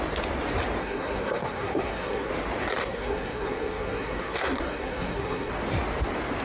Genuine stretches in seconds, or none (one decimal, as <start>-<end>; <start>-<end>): 0.0-0.8; 2.3-2.8; 5.5-6.4